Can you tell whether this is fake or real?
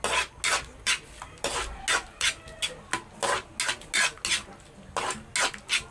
real